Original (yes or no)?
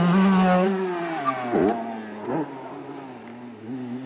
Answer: yes